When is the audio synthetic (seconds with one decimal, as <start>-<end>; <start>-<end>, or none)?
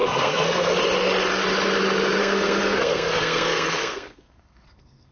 0.0-0.7; 2.2-5.1